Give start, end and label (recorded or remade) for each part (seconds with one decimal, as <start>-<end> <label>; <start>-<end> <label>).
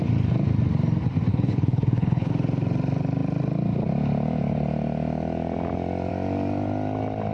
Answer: 0.0-1.3 recorded; 1.3-2.3 remade; 2.3-7.3 recorded